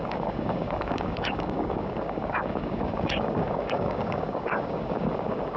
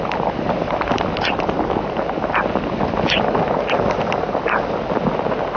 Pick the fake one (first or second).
first